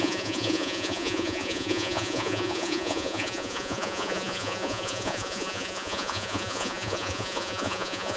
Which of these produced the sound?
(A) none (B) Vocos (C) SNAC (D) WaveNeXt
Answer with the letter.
B